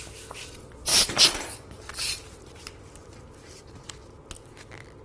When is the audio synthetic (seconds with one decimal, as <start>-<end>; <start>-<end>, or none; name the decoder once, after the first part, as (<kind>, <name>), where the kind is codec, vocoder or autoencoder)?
0.9-3.9 (vocoder, BigVGAN v2)